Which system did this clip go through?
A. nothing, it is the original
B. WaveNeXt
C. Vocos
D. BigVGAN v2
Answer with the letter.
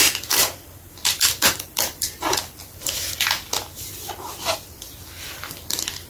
D